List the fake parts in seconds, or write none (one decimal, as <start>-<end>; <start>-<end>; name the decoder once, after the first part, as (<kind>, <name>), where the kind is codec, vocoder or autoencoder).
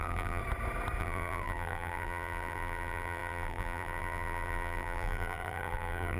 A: 0.0-0.4 (vocoder, BigVGAN v2); 1.0-6.2